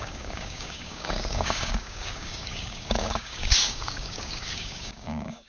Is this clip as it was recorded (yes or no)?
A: no